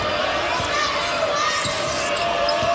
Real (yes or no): yes